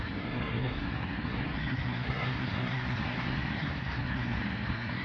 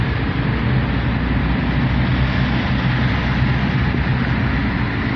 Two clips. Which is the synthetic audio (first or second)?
first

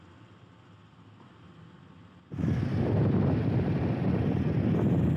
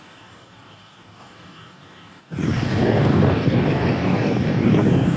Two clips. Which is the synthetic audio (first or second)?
second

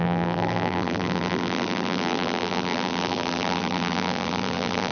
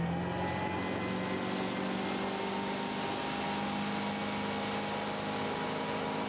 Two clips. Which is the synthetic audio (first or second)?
first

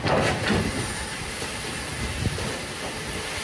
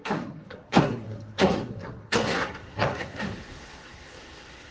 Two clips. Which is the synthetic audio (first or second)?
second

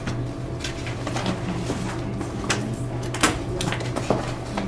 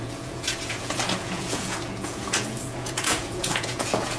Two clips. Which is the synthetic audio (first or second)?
second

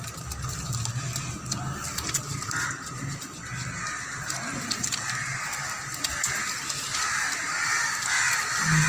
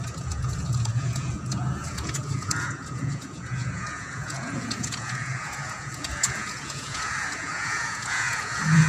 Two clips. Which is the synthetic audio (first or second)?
second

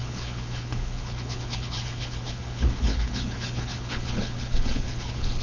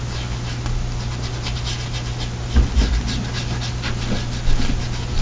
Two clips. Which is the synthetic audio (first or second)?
first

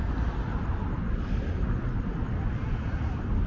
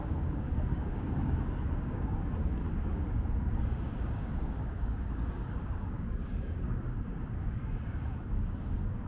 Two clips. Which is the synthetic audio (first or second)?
second